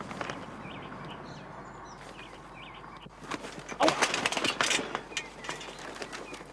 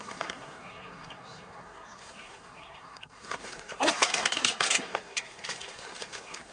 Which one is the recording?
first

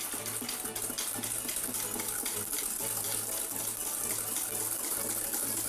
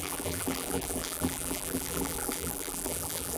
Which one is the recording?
first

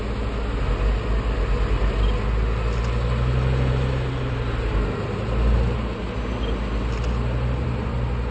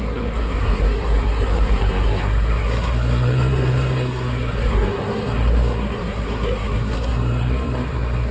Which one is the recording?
first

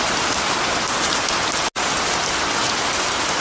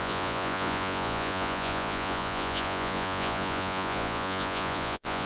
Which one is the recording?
first